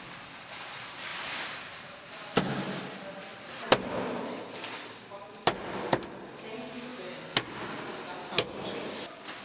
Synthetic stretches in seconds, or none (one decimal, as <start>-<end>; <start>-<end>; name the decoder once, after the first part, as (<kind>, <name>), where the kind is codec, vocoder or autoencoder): 1.1-2.5 (vocoder, BigVGAN v2)